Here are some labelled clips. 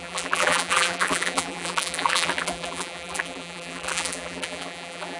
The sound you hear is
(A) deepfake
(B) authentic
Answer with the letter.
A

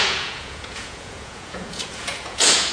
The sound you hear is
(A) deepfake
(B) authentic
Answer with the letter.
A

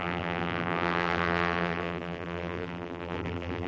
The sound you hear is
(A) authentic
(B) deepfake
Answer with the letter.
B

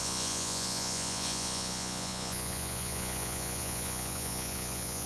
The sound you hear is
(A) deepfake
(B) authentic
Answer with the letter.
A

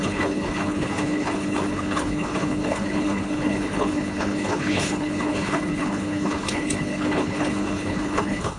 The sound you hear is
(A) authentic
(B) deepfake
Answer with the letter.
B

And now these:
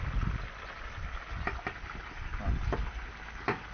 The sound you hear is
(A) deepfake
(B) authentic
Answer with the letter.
B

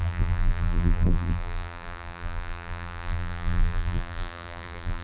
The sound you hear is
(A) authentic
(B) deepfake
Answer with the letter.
B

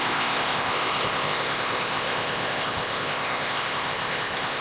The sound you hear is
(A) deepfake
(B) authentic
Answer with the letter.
A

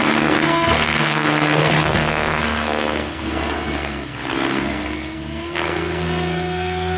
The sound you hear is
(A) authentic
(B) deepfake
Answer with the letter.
B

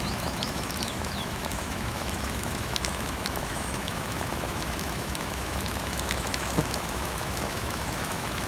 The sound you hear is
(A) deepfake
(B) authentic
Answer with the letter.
A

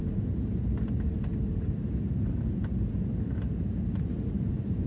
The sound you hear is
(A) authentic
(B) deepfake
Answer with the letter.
B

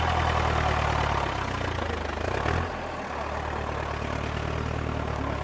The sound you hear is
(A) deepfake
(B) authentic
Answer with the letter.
B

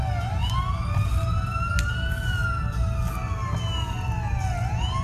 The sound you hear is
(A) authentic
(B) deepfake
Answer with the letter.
A